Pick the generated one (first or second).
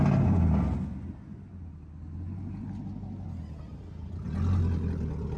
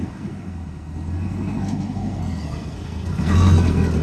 second